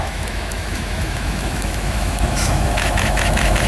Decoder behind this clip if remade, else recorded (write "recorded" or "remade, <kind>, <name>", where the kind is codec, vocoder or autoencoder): remade, autoencoder, DAC-VAE